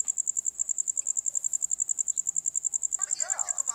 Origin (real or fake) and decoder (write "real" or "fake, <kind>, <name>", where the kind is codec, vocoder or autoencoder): real